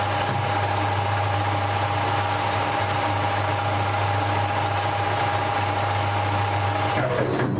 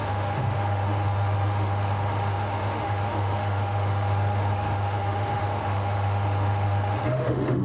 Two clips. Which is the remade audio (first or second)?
second